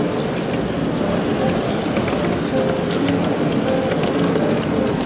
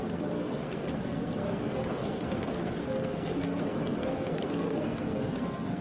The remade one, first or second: second